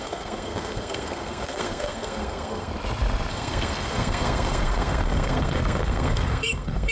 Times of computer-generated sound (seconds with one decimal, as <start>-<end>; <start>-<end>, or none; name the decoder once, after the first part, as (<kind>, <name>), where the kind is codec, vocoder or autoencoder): 0.0-2.7 (codec, SNAC); 3.3-6.9